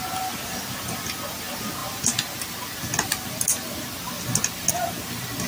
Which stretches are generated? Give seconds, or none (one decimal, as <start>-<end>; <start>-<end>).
none